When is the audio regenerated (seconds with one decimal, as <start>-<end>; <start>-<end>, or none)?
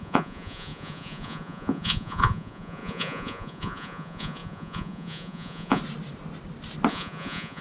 0.0-5.8; 6.9-7.6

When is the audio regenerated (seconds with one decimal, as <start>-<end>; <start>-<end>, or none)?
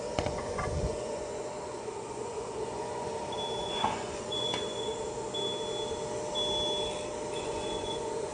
0.0-3.1; 3.6-4.9; 7.4-8.3